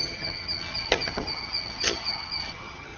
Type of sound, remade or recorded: remade